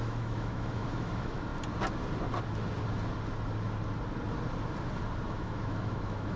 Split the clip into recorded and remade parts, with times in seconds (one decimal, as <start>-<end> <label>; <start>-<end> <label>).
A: 0.0-1.5 remade; 1.5-5.3 recorded; 5.3-6.4 remade